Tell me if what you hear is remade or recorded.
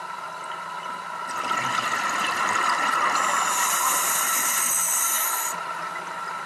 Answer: recorded